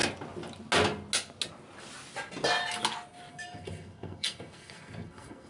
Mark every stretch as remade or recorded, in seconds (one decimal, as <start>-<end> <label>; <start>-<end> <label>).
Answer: 0.0-3.3 recorded; 3.3-5.5 remade